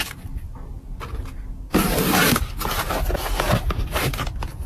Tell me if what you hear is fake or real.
real